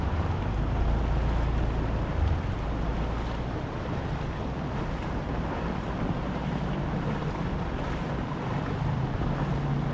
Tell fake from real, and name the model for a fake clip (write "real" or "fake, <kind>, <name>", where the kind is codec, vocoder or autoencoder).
real